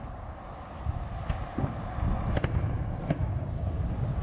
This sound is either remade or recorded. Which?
recorded